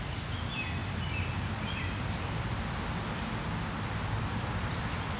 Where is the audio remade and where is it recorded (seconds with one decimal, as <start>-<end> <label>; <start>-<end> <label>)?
0.0-5.2 recorded